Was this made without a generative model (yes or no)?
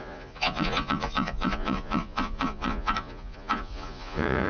no